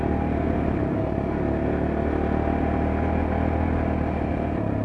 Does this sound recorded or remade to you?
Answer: recorded